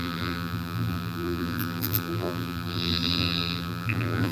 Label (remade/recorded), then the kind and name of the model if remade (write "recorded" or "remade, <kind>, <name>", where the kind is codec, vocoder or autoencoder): remade, vocoder, BigVGAN v2